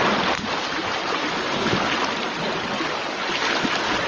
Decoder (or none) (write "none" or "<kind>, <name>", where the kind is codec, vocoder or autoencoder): none